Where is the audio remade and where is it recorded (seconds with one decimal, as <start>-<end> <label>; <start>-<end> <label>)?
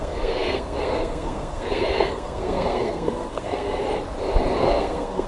0.0-3.8 remade; 3.8-4.6 recorded; 4.6-5.3 remade